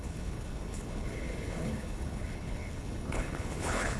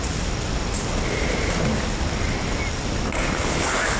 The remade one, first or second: first